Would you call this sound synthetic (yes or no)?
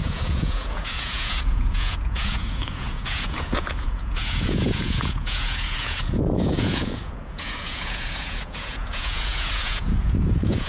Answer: yes